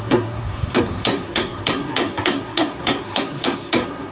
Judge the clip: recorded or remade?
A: remade